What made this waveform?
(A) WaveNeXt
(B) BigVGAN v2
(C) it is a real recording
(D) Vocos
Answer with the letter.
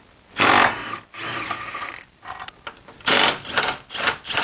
C